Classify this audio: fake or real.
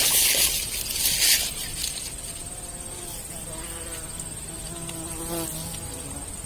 real